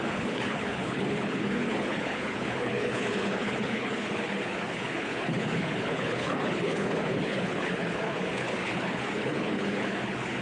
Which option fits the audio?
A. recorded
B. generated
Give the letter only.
B